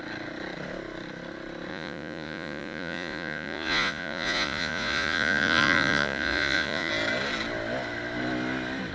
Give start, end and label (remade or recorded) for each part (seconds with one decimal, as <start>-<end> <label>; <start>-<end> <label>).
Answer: 0.0-1.7 recorded; 1.7-6.9 remade; 6.9-8.9 recorded